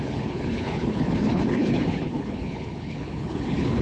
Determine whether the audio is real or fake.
fake